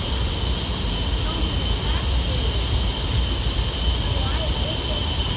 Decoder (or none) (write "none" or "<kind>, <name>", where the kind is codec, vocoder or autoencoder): none